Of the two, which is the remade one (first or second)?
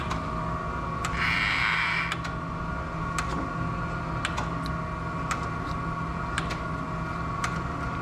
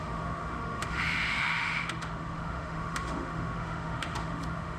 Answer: second